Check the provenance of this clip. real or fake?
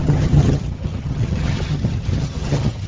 fake